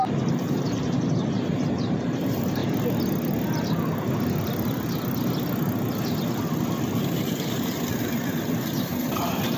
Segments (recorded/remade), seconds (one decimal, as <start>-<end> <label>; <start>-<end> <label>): 0.0-2.6 remade; 2.6-7.0 recorded; 7.0-9.6 remade

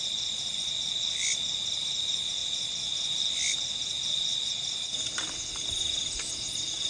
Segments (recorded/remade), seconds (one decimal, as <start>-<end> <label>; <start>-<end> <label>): 0.0-2.4 recorded; 2.4-4.5 remade; 4.5-6.9 recorded

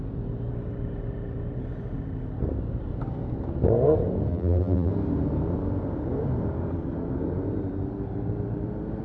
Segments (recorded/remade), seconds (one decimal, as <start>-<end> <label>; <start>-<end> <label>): 0.0-4.3 recorded; 4.3-4.9 remade; 4.9-9.0 recorded